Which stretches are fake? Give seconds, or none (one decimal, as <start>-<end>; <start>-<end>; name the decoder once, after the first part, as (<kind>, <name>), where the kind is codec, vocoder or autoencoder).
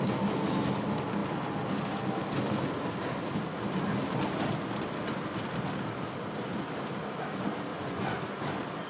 7.7-8.2 (vocoder, Vocos)